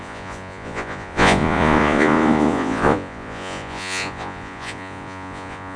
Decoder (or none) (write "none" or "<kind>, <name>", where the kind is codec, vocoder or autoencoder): vocoder, Vocos